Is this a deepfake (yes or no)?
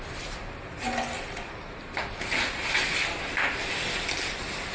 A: no